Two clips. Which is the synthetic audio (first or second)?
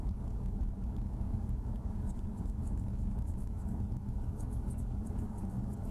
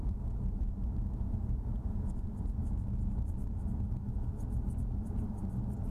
first